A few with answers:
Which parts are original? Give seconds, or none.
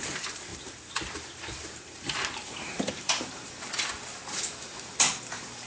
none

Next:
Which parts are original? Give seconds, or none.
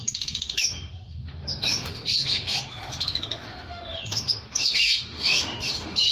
none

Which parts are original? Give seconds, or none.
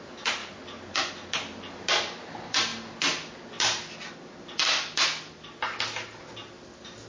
0.0-0.4; 1.7-7.1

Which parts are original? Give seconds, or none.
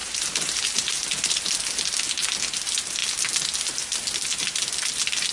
1.3-5.3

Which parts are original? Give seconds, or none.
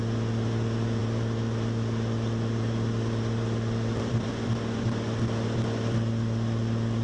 0.0-1.0; 4.3-7.0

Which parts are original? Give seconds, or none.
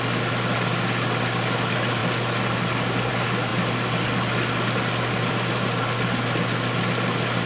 0.0-7.5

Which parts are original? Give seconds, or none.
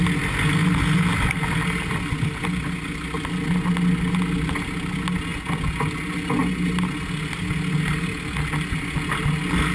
0.0-9.7